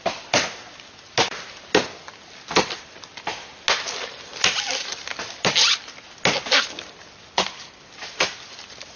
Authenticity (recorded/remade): recorded